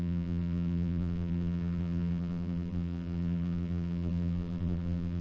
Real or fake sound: fake